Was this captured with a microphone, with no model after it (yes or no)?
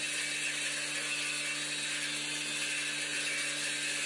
yes